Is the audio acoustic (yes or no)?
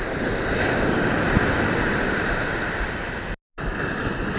yes